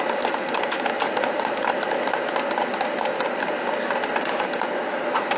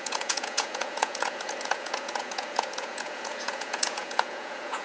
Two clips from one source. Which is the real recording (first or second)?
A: first